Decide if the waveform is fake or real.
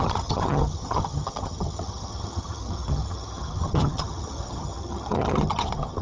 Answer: fake